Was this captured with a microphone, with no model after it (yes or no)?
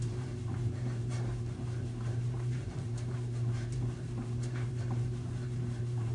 no